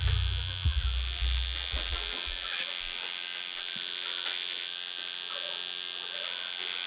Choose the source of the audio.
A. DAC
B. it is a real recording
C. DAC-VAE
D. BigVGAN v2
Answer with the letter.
B